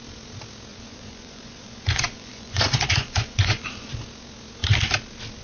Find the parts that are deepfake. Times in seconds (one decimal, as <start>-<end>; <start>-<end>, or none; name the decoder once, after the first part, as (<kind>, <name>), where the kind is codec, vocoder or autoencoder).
0.7-3.9 (vocoder, Vocos)